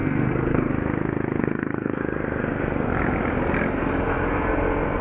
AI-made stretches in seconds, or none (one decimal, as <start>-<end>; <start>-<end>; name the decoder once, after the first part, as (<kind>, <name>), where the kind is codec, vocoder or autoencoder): 0.0-0.7 (codec, SNAC); 1.4-2.0